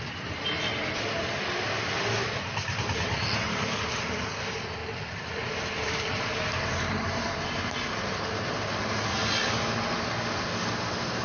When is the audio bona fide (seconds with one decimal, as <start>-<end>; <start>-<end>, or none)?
0.0-4.8; 8.8-11.2